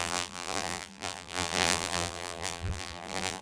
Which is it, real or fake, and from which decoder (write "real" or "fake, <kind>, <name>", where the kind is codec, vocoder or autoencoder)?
fake, vocoder, BigVGAN v2